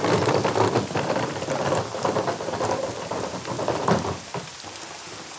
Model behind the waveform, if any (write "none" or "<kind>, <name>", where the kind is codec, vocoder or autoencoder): none